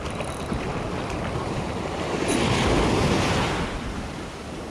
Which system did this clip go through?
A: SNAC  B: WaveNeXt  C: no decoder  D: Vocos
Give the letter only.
C